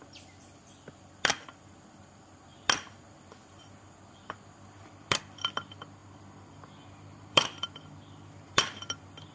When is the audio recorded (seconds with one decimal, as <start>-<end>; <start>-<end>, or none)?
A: 2.5-3.1